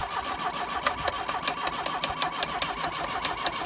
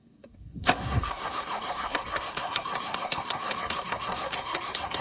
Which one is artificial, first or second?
second